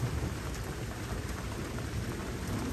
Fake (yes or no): no